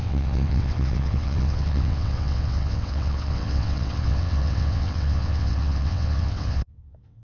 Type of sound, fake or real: fake